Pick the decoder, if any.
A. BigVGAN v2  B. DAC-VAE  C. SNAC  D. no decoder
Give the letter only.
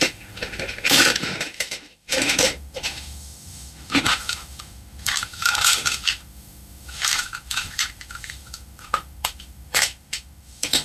B